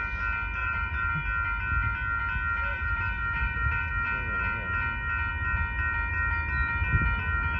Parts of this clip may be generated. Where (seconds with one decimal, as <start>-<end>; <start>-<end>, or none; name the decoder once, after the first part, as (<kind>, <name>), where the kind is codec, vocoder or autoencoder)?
0.6-1.1 (vocoder, BigVGAN v2); 2.7-3.9